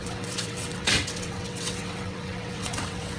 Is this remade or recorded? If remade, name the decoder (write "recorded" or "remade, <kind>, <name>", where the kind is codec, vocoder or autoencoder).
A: remade, vocoder, WaveNeXt